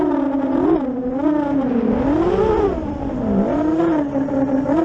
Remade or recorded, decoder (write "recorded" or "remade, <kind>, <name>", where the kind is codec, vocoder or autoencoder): recorded